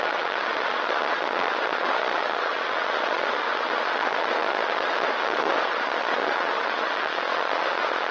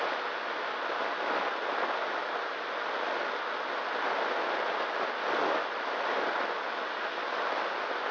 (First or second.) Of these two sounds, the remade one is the first